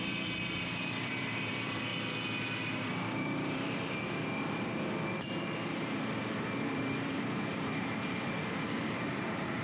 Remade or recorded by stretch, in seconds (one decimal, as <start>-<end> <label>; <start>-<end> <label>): 0.0-1.9 remade; 1.9-2.7 recorded; 2.7-9.6 remade